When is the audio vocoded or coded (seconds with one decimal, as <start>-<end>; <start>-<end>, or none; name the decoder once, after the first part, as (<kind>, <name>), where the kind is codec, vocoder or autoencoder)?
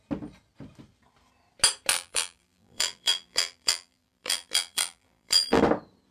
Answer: 1.9-5.6 (vocoder, BigVGAN v2)